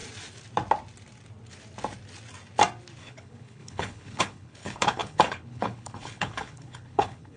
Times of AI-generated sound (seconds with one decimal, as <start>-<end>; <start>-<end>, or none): 3.0-7.4